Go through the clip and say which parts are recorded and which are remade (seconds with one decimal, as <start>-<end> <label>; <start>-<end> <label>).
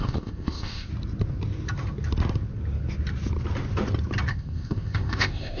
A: 0.0-0.9 remade; 0.9-4.3 recorded; 4.3-5.6 remade